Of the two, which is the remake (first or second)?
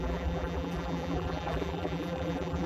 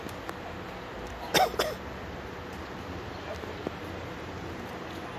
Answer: first